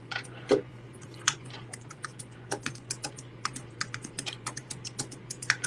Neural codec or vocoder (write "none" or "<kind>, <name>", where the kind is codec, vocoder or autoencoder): vocoder, Vocos